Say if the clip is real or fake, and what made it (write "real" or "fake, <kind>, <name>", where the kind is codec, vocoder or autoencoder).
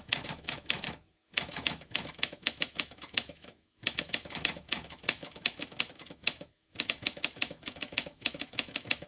fake, autoencoder, DAC-VAE